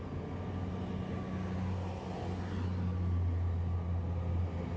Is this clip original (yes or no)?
yes